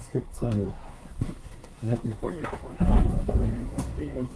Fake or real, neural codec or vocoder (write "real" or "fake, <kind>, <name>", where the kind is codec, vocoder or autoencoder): fake, codec, SNAC